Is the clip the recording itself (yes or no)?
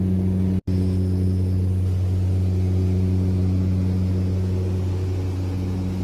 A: yes